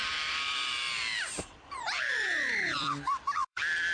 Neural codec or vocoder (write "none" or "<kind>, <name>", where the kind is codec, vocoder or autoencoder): vocoder, BigVGAN v2